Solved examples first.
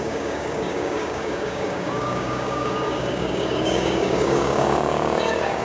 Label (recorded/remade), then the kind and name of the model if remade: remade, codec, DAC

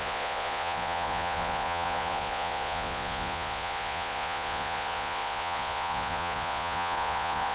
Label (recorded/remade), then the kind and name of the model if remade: remade, vocoder, Vocos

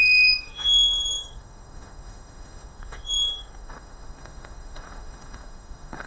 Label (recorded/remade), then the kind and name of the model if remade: remade, autoencoder, DAC-VAE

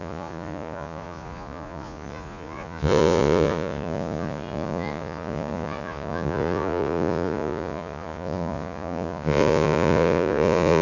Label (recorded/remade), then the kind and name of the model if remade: remade, vocoder, Vocos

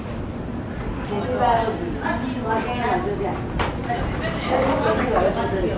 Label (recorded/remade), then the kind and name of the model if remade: recorded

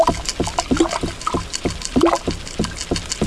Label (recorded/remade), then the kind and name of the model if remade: recorded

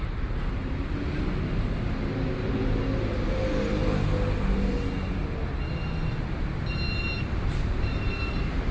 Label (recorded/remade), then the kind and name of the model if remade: recorded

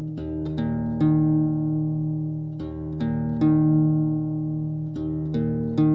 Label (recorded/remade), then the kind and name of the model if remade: recorded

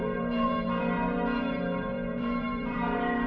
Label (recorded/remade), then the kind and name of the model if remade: remade, vocoder, BigVGAN v2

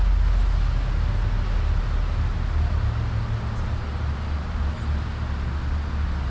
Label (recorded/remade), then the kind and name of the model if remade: recorded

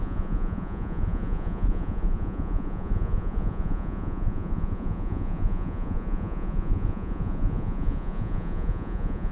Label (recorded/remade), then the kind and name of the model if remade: remade, vocoder, Vocos